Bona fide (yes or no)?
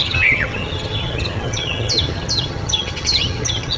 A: no